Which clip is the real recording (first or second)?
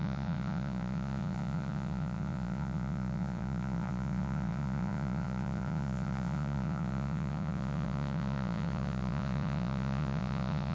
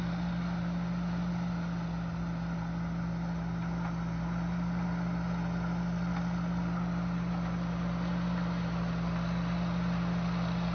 second